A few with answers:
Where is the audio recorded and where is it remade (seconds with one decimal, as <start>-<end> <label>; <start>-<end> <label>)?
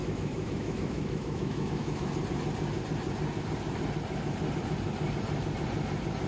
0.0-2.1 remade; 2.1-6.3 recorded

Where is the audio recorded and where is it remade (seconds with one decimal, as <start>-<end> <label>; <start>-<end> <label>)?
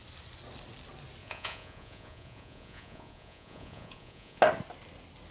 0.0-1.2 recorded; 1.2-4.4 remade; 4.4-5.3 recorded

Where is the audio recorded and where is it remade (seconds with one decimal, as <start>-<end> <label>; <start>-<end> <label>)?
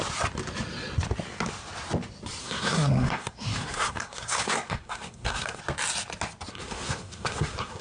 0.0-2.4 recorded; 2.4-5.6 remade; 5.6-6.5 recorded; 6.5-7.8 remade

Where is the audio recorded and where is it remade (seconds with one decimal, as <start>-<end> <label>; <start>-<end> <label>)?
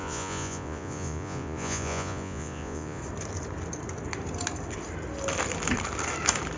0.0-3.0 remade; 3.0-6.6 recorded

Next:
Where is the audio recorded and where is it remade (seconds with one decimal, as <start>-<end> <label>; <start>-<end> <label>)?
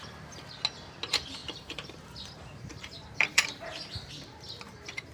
0.0-1.4 recorded; 1.4-4.1 remade; 4.1-5.1 recorded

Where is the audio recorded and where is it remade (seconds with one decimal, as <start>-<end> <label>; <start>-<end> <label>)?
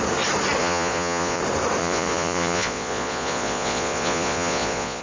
0.0-0.6 recorded; 0.6-1.4 remade; 1.4-1.8 recorded; 1.8-5.0 remade